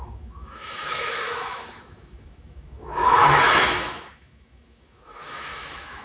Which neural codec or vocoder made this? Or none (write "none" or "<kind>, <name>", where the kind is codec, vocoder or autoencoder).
autoencoder, DAC-VAE